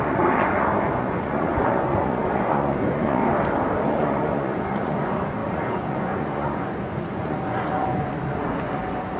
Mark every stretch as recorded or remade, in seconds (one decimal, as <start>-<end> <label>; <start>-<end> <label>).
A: 0.0-3.2 remade; 3.2-3.9 recorded; 3.9-9.2 remade